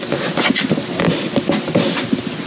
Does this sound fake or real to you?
real